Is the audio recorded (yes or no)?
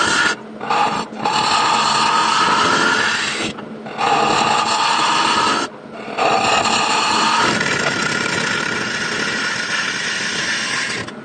yes